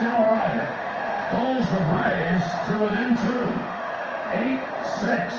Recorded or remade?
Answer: remade